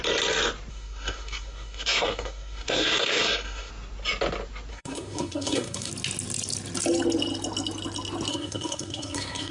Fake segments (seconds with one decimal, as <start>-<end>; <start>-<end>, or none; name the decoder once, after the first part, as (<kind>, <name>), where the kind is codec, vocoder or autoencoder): 0.7-3.7 (codec, SNAC); 4.7-5.9; 8.3-9.5